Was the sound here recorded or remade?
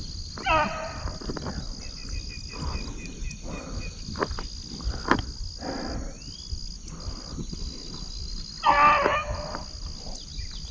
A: recorded